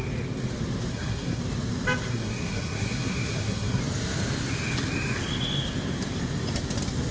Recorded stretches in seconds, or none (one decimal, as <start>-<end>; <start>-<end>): 0.0-0.9; 1.4-2.1; 3.8-7.1